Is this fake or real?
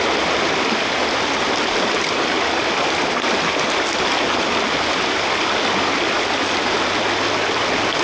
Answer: real